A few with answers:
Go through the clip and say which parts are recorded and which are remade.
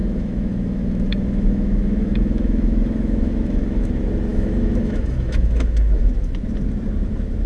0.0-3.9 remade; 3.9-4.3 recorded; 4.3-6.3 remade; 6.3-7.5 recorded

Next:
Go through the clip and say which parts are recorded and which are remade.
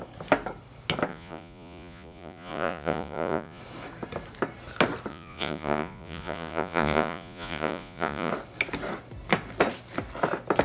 0.0-1.1 recorded; 1.1-3.6 remade; 3.6-5.1 recorded; 5.1-8.3 remade; 8.3-10.6 recorded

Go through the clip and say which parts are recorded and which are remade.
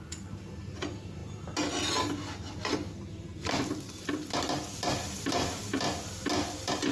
0.0-4.9 recorded; 4.9-5.7 remade; 5.7-6.9 recorded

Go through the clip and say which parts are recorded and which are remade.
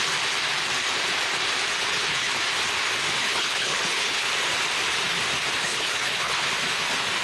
0.0-1.8 recorded; 1.8-2.3 remade; 2.3-3.2 recorded; 3.2-4.3 remade; 4.3-5.6 recorded; 5.6-6.5 remade; 6.5-7.2 recorded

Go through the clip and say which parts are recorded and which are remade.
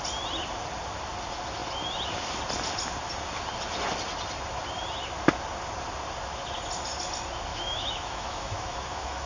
0.0-7.5 recorded; 7.5-9.3 remade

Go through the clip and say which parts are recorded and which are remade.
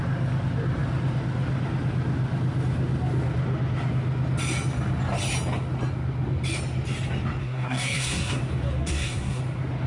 0.0-7.4 recorded; 7.4-8.4 remade; 8.4-8.8 recorded; 8.8-9.4 remade; 9.4-9.9 recorded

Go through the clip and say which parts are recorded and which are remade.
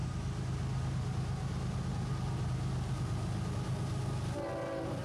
0.0-5.0 recorded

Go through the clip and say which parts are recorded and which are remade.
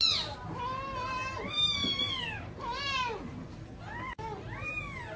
0.0-5.2 recorded